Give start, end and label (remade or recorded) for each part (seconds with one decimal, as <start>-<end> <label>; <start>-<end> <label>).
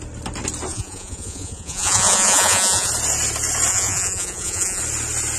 0.0-0.7 recorded; 0.7-2.9 remade; 2.9-3.7 recorded; 3.7-4.8 remade; 4.8-5.4 recorded